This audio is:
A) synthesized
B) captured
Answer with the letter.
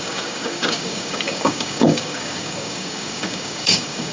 A